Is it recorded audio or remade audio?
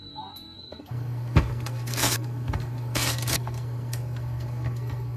remade